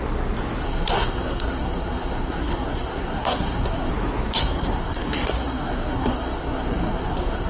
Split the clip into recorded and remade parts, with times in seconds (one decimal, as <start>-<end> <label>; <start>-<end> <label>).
0.0-0.6 recorded; 0.6-3.9 remade; 3.9-4.4 recorded; 4.4-7.5 remade